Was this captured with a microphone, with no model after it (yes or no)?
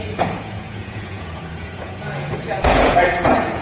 no